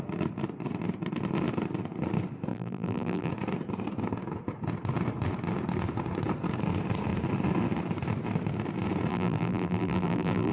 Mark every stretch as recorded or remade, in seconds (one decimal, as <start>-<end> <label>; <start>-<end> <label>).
0.0-2.5 recorded; 2.5-3.3 remade; 3.3-9.1 recorded; 9.1-10.5 remade